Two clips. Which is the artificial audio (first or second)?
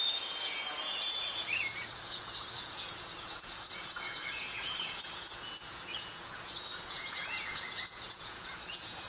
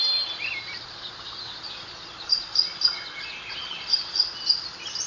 first